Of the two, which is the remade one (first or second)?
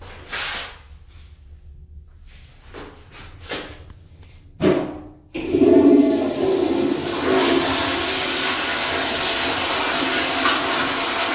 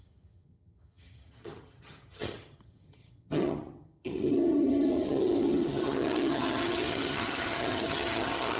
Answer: second